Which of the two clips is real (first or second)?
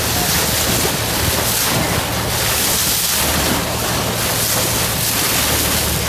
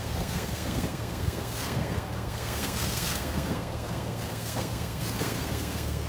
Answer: first